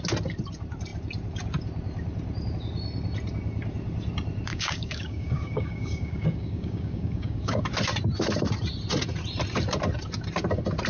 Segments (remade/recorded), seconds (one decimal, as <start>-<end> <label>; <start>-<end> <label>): 0.0-4.5 recorded; 4.5-7.6 remade; 7.6-10.9 recorded